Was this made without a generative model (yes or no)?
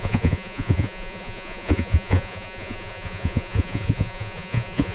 no